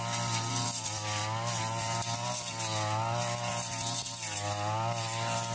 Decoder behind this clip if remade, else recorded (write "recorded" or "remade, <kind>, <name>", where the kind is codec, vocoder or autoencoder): recorded